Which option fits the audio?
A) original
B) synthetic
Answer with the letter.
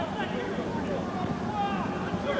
A